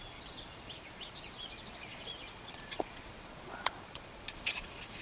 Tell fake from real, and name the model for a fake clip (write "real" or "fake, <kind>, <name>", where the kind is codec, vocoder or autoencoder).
fake, vocoder, Vocos